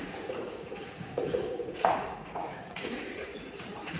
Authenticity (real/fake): fake